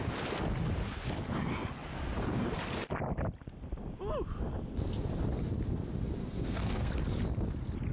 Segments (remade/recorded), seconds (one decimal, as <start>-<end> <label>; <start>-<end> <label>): 0.0-6.2 recorded; 6.2-6.9 remade; 6.9-7.9 recorded